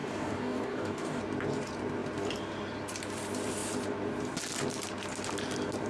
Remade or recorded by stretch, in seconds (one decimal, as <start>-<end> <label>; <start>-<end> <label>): 0.0-1.2 remade; 1.2-5.9 recorded